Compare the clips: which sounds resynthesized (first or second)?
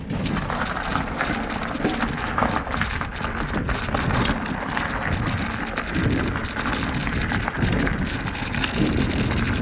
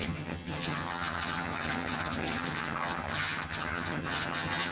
second